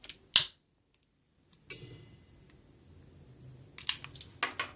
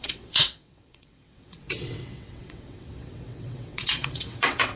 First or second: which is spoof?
second